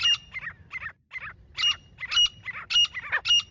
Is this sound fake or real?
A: real